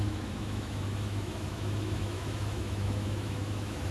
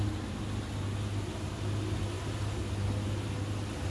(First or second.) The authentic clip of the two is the second